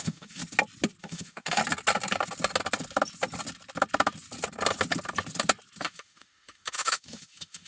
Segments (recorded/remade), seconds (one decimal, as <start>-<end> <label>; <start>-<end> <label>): 0.0-0.4 remade; 0.4-1.0 recorded; 1.0-1.6 remade; 1.6-5.8 recorded; 5.8-7.7 remade